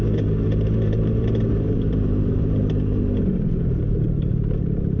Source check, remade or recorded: remade